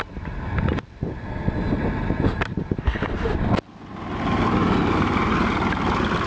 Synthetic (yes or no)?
no